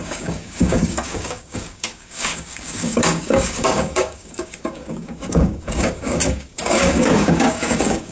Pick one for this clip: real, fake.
fake